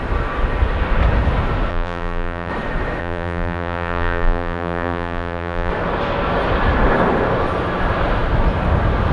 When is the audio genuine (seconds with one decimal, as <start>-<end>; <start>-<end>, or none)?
0.0-1.7; 2.5-3.0; 5.7-9.1